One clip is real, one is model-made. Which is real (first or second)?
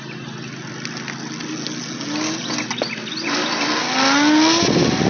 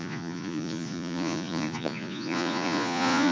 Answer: first